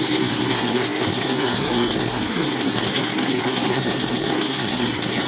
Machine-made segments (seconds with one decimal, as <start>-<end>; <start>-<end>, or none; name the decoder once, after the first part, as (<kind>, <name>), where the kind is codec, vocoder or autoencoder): 0.0-5.3 (codec, SNAC)